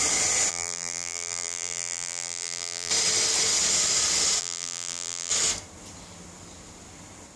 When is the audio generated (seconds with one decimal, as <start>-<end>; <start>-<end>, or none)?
0.5-2.9; 4.4-5.3